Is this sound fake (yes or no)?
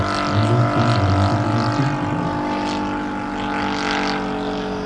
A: no